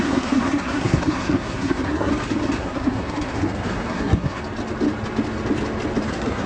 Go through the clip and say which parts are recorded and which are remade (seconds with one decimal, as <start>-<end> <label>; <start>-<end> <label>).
0.0-2.1 remade; 2.1-2.6 recorded; 2.6-4.4 remade; 4.4-6.1 recorded; 6.1-6.5 remade